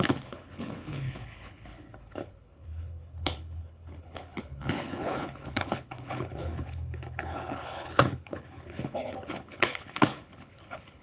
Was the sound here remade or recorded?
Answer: remade